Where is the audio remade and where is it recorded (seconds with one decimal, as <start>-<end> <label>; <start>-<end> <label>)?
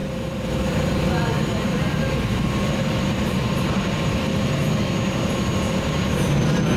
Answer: 0.0-4.6 remade; 4.6-6.0 recorded; 6.0-6.8 remade